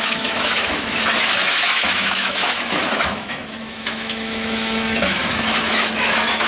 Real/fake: fake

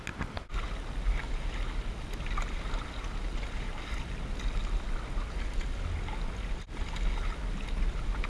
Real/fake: real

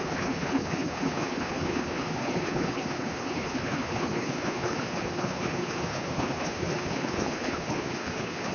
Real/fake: fake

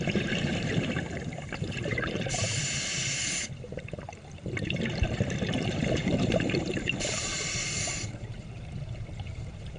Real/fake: fake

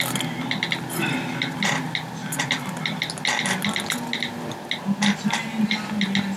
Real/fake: real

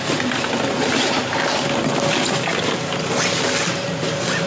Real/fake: real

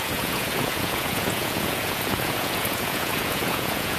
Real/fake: fake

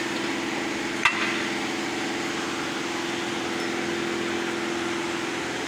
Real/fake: real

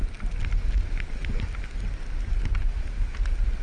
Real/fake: real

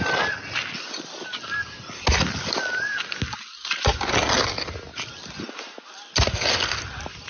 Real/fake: real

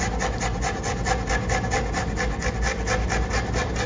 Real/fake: real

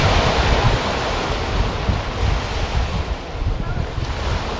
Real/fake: real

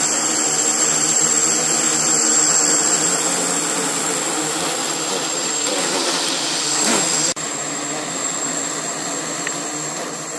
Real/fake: real